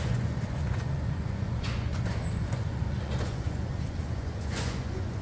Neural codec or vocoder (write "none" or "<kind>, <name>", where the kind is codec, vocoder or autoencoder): vocoder, Vocos